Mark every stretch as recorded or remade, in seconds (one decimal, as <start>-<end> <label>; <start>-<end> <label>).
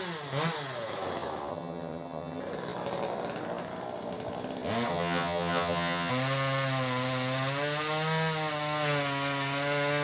0.0-1.5 recorded; 1.5-2.4 remade; 2.4-4.9 recorded; 4.9-6.1 remade; 6.1-10.0 recorded